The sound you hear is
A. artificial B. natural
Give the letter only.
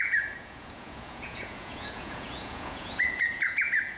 A